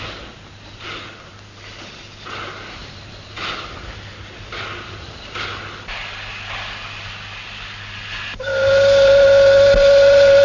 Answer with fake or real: real